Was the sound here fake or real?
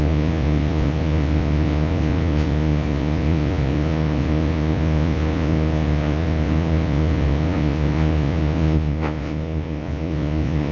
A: fake